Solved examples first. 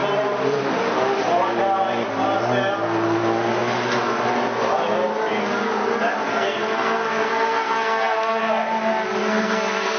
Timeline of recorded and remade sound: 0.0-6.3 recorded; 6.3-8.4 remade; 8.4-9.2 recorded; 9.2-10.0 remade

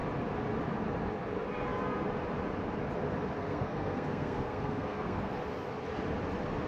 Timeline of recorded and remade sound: 0.0-3.4 recorded; 3.4-5.3 remade; 5.3-6.7 recorded

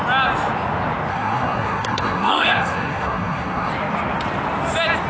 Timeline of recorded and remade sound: 0.0-1.1 recorded; 1.1-3.7 remade; 3.7-5.1 recorded

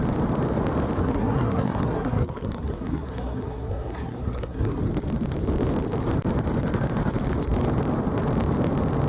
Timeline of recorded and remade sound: 0.0-1.0 recorded; 1.0-4.8 remade; 4.8-9.1 recorded

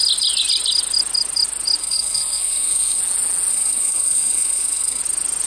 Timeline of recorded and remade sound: 0.0-1.8 recorded; 1.8-3.0 remade; 3.0-3.5 recorded; 3.5-5.0 remade; 5.0-5.5 recorded

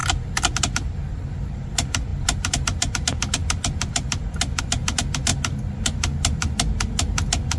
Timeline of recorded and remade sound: 0.0-7.6 recorded

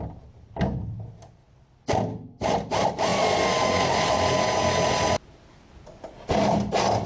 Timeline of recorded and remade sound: 0.0-7.1 recorded